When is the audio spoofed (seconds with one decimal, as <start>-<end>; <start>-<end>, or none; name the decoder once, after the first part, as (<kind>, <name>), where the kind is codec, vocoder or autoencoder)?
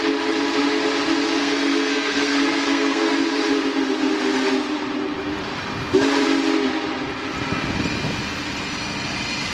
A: 1.4-3.1 (codec, SNAC)